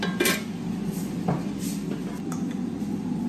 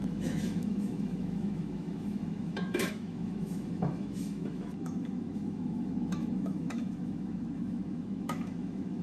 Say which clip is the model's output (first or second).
second